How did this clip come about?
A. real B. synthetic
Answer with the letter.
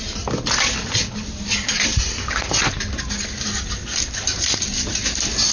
A